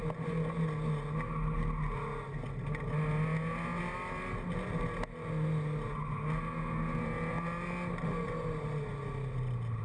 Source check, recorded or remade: recorded